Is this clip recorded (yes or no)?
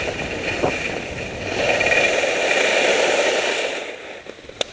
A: yes